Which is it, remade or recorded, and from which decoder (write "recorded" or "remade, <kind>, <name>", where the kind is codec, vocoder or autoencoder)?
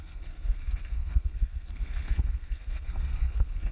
remade, codec, SNAC